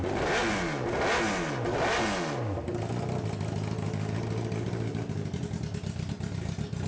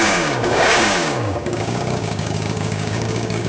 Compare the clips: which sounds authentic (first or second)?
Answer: first